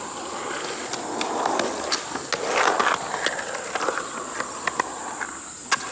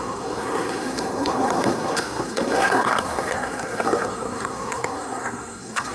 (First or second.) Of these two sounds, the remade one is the second